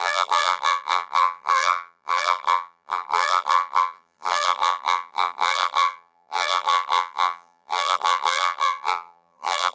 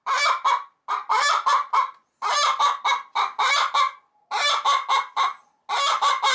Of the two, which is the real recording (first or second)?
second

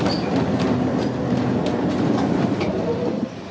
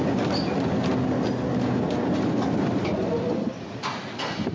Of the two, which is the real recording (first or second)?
second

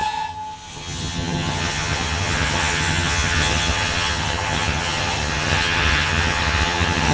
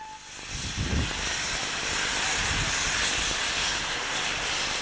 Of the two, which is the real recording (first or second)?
second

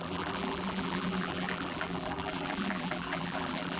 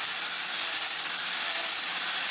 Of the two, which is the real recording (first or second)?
second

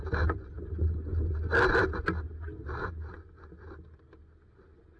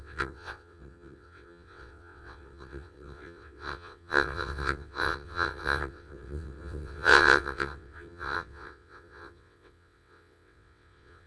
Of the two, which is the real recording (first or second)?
first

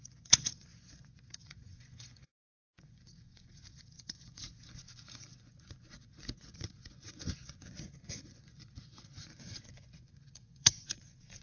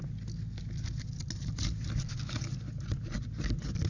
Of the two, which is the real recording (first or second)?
second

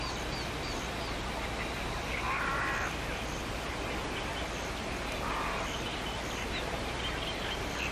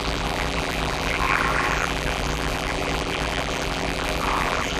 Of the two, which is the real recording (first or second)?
first